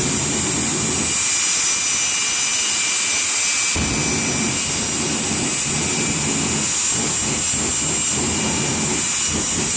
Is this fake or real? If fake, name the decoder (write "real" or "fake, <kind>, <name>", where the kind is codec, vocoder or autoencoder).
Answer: real